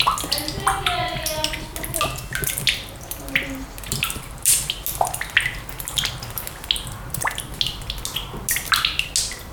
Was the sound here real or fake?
real